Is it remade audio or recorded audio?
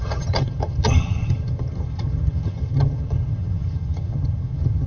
remade